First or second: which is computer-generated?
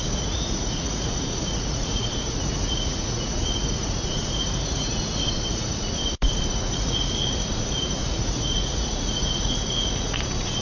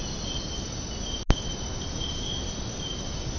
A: first